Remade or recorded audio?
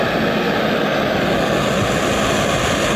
recorded